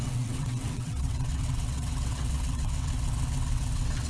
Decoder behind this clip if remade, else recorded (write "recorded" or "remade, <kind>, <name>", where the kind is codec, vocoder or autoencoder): remade, vocoder, WaveNeXt